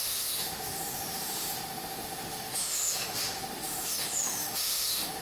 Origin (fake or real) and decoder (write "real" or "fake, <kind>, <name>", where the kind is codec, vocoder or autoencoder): fake, autoencoder, DAC-VAE